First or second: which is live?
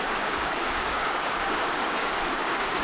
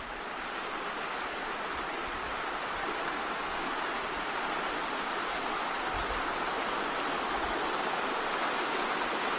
second